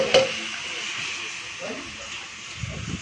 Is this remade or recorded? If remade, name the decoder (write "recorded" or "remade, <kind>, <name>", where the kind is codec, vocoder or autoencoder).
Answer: recorded